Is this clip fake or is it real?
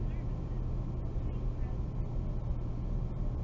real